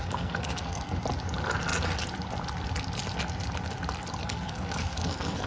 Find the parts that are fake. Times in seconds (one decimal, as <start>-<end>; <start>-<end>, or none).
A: 0.0-1.0; 4.2-5.5